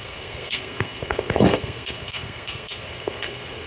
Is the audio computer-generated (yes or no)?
yes